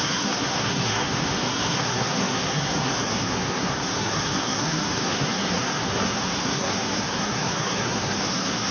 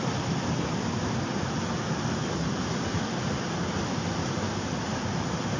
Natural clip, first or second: second